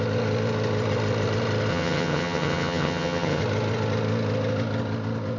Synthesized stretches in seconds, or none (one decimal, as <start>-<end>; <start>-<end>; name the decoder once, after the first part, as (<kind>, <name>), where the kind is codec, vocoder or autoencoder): 1.7-3.4 (vocoder, HiFi-GAN)